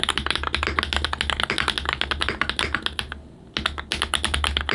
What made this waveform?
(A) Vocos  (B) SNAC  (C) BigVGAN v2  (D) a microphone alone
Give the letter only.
D